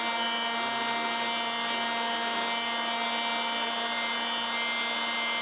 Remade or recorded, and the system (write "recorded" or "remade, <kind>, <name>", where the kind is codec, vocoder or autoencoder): recorded